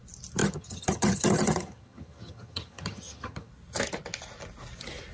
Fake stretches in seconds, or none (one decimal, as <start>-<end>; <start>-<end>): 0.4-3.5